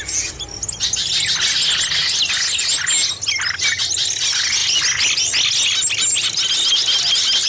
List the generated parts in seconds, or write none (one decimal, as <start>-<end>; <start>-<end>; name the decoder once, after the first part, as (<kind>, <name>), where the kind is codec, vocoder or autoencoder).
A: none